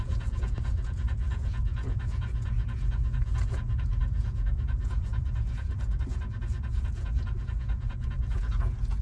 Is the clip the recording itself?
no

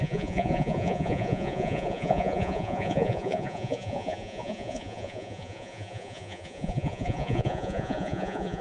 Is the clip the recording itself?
no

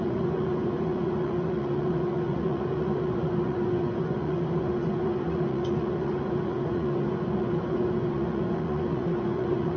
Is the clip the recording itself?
no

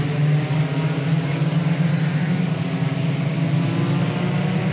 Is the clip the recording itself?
yes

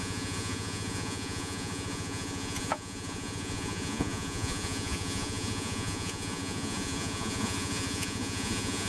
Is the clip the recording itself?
no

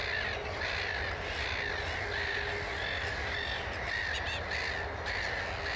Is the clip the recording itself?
yes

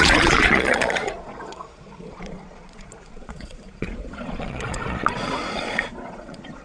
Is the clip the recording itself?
no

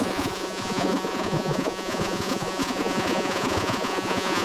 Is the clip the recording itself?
no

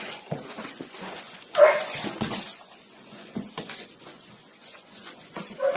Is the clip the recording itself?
no